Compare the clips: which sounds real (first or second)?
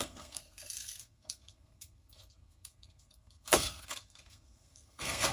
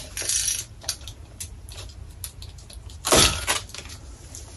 second